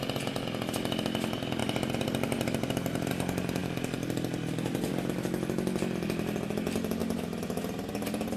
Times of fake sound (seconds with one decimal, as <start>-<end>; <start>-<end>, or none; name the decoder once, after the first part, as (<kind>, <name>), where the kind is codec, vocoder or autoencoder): 1.6-3.1 (vocoder, BigVGAN v2)